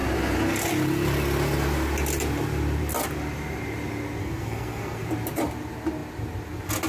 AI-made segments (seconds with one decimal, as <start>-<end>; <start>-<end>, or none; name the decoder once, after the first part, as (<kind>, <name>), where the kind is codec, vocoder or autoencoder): 4.2-5.1 (codec, SNAC)